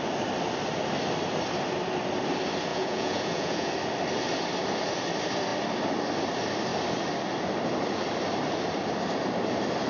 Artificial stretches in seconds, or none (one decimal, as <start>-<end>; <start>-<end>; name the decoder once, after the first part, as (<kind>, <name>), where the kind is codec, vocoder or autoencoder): 2.7-3.7 (vocoder, Vocos)

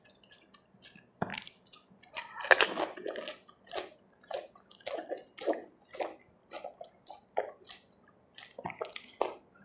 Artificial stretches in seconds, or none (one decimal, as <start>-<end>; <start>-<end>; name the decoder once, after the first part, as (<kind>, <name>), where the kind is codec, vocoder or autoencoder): 1.3-2.1 (vocoder, BigVGAN v2); 6.4-6.9

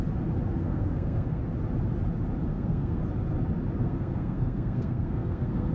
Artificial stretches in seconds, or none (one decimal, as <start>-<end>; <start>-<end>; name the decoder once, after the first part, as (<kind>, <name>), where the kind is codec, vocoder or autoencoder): 0.6-1.4 (codec, SNAC); 2.4-3.0; 3.8-5.7

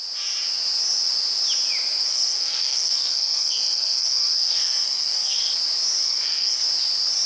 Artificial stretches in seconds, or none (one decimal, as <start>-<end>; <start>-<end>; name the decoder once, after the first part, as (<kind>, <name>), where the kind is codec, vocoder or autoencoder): 2.1-5.5 (codec, SNAC); 6.0-6.6